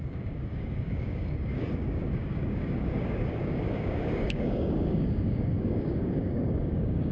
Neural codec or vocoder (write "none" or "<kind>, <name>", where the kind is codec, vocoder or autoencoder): codec, DAC